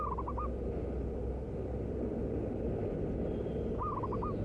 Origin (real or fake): real